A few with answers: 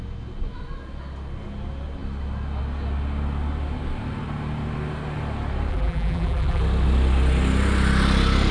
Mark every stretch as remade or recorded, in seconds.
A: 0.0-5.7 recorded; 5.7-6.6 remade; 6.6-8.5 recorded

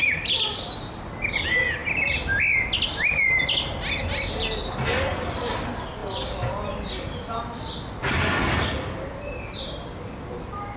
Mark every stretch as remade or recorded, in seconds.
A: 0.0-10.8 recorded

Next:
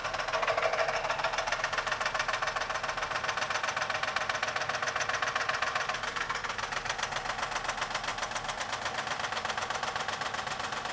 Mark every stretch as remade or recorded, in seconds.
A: 0.0-10.9 recorded

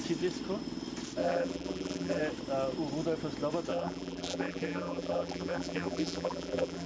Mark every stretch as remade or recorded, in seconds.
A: 0.0-1.2 recorded; 1.2-2.2 remade; 2.2-3.7 recorded; 3.7-6.9 remade

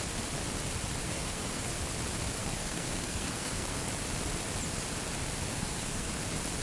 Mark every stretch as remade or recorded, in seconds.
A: 0.0-1.0 recorded; 1.0-1.8 remade; 1.8-2.4 recorded; 2.4-3.8 remade; 3.8-5.5 recorded; 5.5-6.1 remade; 6.1-6.6 recorded

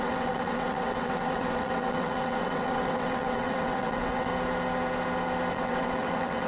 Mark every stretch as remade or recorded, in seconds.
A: 0.0-4.3 remade; 4.3-5.5 recorded; 5.5-6.5 remade